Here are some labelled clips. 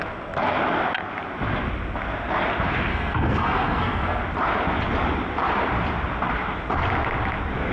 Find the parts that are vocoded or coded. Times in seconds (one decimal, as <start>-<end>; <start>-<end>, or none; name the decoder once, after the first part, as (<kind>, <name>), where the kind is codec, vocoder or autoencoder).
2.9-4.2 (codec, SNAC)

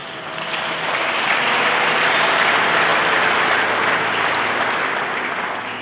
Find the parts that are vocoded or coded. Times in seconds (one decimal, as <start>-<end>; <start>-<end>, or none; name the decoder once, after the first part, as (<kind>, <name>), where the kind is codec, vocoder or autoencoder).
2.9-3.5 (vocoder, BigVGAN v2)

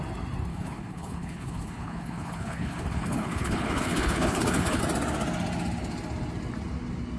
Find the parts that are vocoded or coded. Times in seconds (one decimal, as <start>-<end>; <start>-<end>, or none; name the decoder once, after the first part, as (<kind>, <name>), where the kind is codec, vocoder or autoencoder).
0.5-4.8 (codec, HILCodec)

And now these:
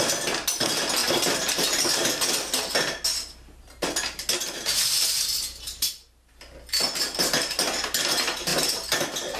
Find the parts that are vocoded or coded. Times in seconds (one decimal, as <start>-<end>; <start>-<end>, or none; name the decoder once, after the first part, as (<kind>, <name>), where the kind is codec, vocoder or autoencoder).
none

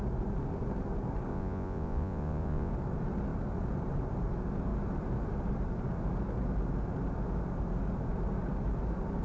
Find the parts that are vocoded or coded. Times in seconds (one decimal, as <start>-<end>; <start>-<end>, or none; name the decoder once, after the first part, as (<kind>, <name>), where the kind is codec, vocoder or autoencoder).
1.3-2.7 (vocoder, Vocos)